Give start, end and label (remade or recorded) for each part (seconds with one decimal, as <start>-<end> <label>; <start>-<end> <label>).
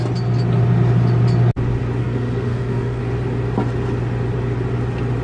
0.0-2.0 recorded; 2.0-3.0 remade; 3.0-5.2 recorded